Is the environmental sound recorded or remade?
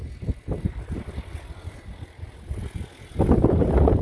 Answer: recorded